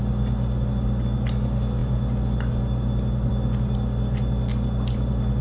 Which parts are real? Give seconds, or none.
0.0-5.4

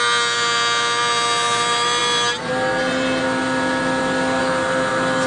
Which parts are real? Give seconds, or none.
0.0-5.3

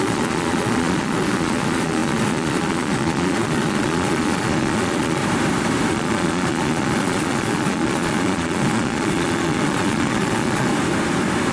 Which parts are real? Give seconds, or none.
5.2-5.9; 10.7-11.5

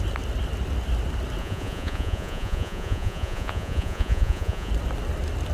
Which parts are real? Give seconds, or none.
0.0-1.4; 4.7-5.5